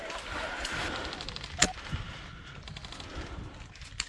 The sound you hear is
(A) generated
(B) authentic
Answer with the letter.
B